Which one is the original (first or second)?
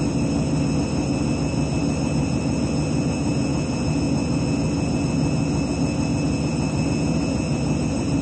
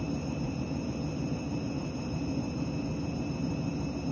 first